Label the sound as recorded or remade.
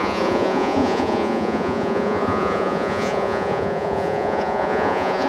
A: remade